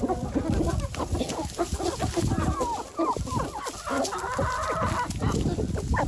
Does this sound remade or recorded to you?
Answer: recorded